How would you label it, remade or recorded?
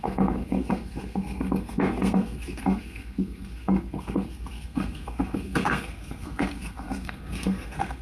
remade